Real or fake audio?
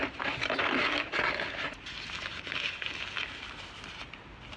real